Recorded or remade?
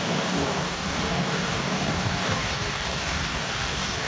remade